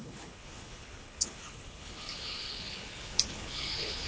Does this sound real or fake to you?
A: fake